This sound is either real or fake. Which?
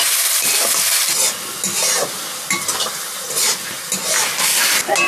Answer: real